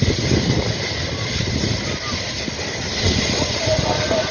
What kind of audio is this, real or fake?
real